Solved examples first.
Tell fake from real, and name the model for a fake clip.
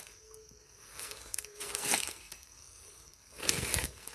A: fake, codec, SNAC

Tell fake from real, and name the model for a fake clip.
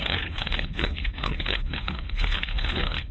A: fake, codec, HILCodec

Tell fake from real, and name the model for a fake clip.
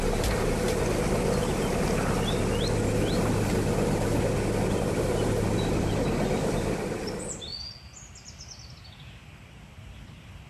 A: real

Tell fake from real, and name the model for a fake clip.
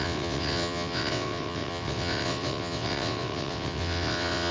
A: fake, vocoder, WaveNeXt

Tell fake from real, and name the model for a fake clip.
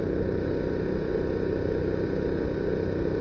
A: real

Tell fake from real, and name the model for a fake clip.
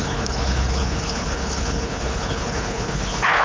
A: fake, codec, HILCodec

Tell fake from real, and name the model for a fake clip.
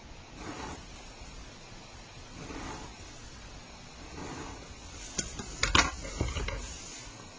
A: real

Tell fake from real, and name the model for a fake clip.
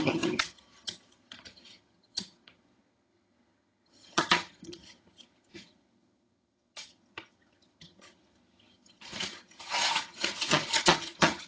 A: fake, vocoder, HiFi-GAN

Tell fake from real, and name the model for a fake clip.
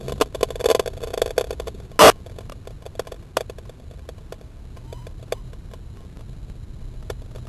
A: real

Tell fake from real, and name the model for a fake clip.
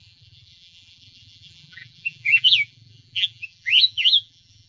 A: fake, vocoder, BigVGAN v2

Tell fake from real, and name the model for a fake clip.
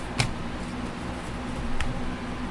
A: real